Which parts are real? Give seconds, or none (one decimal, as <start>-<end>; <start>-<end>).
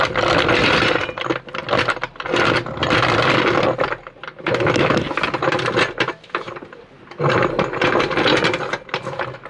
0.0-9.5